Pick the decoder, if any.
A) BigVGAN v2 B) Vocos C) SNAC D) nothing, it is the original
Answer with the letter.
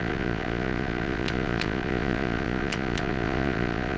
B